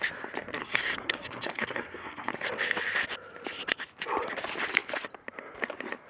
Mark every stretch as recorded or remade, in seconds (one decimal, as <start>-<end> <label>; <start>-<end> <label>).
0.0-0.6 recorded; 0.6-2.5 remade; 2.5-6.1 recorded

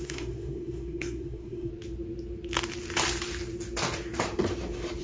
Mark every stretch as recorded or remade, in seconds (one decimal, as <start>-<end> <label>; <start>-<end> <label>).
0.0-1.7 remade; 1.7-5.0 recorded

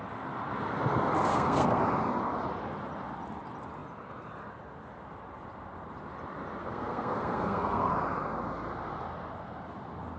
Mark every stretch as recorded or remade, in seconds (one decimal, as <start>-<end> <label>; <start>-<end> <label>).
0.0-1.3 recorded; 1.3-1.8 remade; 1.8-6.6 recorded; 6.6-7.9 remade; 7.9-10.2 recorded

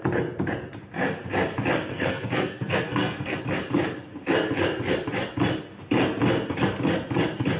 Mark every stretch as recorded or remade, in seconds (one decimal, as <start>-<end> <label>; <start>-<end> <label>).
0.0-1.9 recorded; 1.9-3.4 remade; 3.4-7.6 recorded

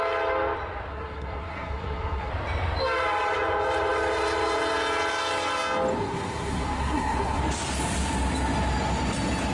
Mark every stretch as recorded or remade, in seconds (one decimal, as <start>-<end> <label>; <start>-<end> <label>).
0.0-0.9 recorded; 0.9-2.3 remade; 2.3-6.0 recorded; 6.0-7.4 remade; 7.4-9.5 recorded

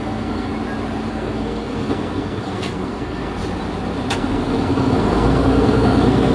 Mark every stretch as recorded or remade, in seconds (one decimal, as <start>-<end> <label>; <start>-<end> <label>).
0.0-0.5 remade; 0.5-1.1 recorded; 1.1-3.4 remade; 3.4-4.1 recorded; 4.1-6.3 remade